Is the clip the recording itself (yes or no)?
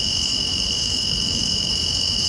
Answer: no